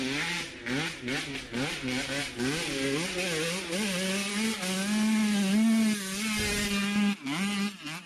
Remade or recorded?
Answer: recorded